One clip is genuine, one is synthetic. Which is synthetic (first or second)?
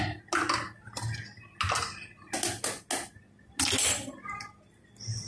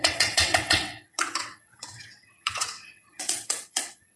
second